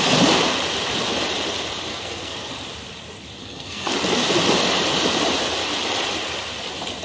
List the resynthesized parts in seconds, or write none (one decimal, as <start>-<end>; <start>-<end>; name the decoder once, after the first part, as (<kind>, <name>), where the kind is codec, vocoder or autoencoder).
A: 1.9-2.5 (codec, SNAC); 3.4-3.9

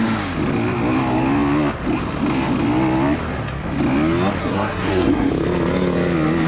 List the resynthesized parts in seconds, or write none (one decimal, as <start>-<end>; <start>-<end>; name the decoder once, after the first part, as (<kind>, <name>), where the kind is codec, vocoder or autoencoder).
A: 4.4-5.3 (codec, SNAC)